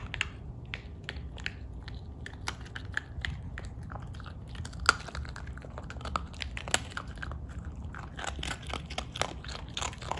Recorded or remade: recorded